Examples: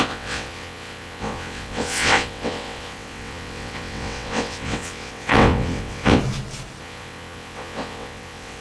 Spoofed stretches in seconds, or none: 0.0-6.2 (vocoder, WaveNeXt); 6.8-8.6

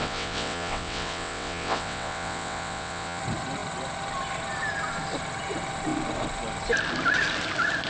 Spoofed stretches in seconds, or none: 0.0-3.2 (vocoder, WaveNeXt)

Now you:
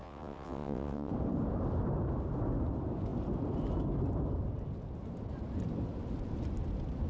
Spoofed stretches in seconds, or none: 0.0-1.1 (vocoder, WaveNeXt)